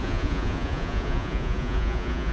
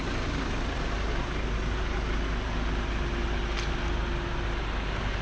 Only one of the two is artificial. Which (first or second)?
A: first